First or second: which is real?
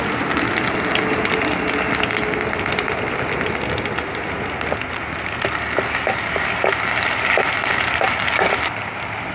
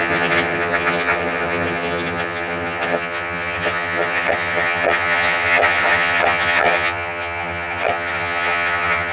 first